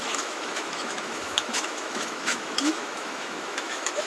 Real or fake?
fake